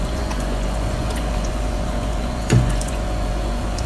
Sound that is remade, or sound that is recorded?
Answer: remade